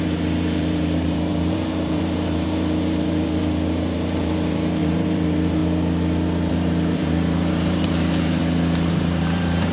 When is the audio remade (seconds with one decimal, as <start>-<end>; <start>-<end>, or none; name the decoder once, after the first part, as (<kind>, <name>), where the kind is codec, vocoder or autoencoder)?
0.0-5.6 (vocoder, BigVGAN v2); 6.5-8.4; 8.9-9.7